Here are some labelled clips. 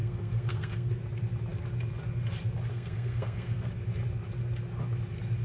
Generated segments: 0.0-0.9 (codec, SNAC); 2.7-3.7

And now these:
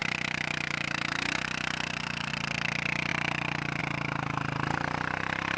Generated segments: 0.0-2.3 (autoencoder, DAC-VAE)

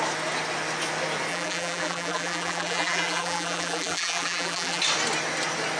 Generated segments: 1.3-4.8 (vocoder, BigVGAN v2)